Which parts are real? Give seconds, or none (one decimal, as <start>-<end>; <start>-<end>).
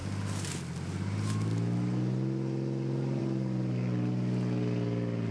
0.0-5.3